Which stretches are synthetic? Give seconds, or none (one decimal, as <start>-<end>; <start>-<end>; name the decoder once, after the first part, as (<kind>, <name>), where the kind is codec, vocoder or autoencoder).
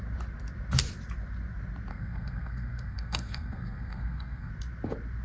1.9-4.5 (codec, SNAC)